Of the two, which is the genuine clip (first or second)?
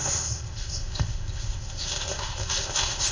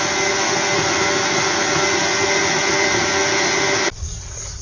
second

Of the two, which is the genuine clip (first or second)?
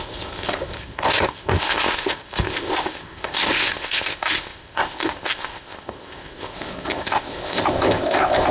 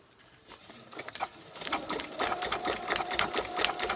second